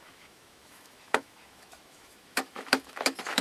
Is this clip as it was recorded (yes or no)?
no